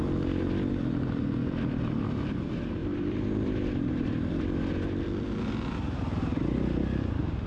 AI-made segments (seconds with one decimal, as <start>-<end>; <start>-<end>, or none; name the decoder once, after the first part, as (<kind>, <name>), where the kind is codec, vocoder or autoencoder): 2.8-4.1 (vocoder, BigVGAN v2)

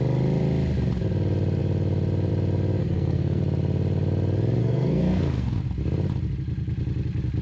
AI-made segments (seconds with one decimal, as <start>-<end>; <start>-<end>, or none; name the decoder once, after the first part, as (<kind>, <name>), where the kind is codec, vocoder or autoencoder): 2.8-3.4 (codec, SNAC); 4.6-5.6

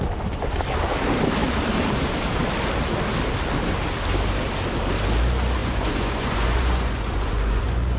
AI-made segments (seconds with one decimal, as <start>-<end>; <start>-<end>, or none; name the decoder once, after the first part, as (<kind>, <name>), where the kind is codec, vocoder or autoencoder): 5.6-8.0 (vocoder, Vocos)

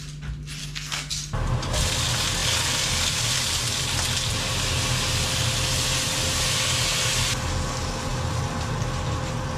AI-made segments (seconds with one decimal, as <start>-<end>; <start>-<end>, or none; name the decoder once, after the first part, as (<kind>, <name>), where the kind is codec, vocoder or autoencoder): 0.6-1.1 (codec, SNAC)

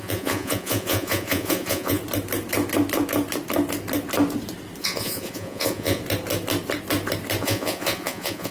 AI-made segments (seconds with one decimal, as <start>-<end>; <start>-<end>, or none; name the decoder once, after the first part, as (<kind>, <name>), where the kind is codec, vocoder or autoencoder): 0.0-2.0 (vocoder, Vocos); 4.8-6.0; 7.4-8.5

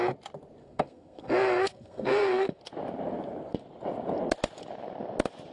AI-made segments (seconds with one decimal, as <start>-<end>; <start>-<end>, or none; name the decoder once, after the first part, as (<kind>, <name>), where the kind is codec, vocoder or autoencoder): 0.6-2.6 (codec, SNAC)

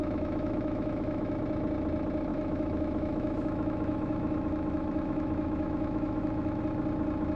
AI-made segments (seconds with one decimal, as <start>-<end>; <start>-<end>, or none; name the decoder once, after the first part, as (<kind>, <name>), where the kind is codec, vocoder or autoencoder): 0.0-1.3 (autoencoder, DAC-VAE); 2.3-6.6

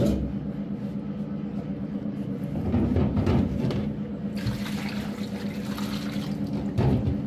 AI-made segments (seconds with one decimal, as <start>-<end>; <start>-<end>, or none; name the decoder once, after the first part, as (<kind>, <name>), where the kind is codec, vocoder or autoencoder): 1.7-3.9 (vocoder, BigVGAN v2)